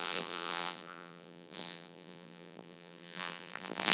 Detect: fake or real fake